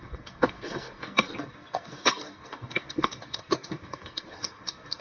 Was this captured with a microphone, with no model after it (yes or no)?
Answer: no